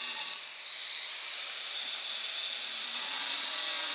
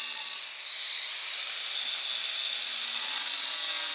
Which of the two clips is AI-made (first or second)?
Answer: first